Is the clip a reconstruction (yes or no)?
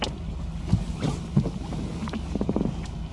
no